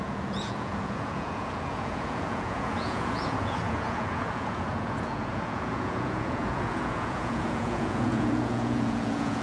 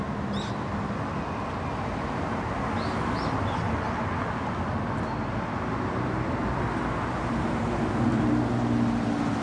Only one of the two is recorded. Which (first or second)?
second